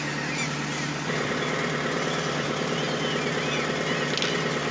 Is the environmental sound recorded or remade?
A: recorded